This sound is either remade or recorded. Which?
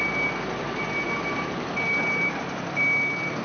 recorded